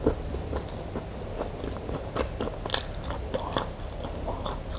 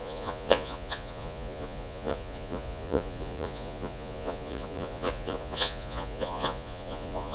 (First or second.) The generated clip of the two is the second